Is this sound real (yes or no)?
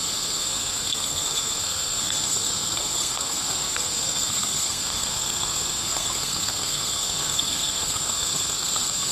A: no